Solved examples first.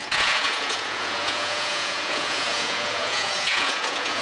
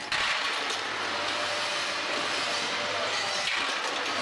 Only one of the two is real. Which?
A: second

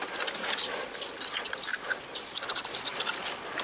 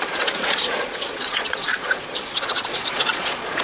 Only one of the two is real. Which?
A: first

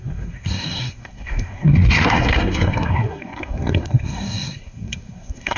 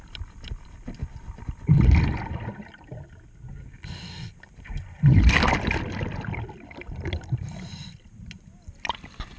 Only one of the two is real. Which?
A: second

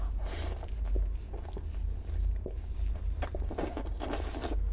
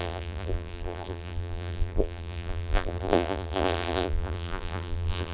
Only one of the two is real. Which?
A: first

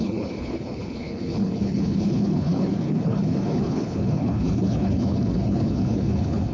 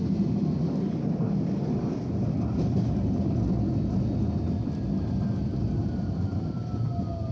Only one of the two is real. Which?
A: second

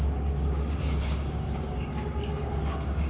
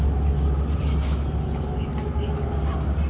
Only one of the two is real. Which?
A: second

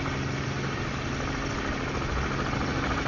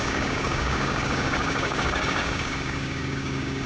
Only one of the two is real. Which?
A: first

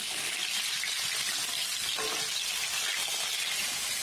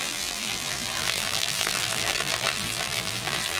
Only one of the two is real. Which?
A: first